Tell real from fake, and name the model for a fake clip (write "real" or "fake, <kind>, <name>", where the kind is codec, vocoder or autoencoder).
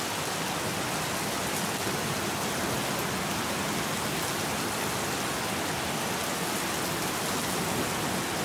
real